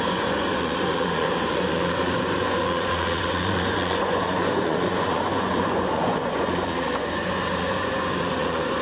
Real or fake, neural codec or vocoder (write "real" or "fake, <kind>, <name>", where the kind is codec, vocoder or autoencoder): fake, vocoder, Vocos